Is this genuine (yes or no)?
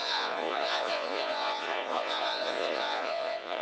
no